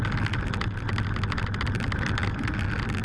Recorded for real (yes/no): yes